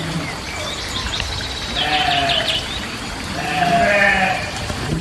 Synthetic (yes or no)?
no